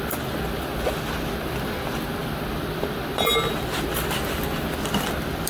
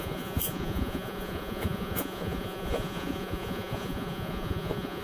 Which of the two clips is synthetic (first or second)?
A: second